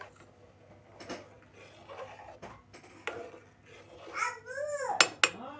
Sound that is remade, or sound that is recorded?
recorded